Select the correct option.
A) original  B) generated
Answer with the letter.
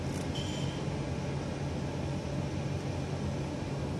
A